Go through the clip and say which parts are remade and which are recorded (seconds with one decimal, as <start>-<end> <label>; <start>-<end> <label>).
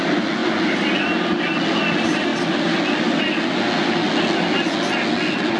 0.0-5.6 recorded